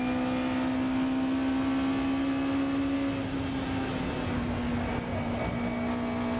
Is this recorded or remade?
recorded